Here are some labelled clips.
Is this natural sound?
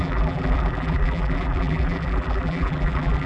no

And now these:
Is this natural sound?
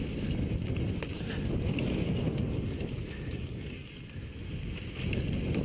yes